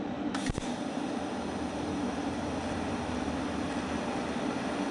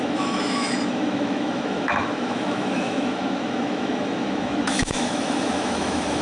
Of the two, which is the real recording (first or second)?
first